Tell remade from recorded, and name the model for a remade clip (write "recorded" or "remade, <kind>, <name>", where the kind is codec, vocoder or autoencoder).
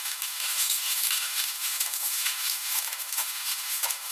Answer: remade, autoencoder, DAC-VAE